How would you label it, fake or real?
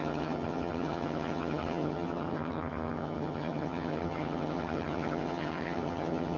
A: fake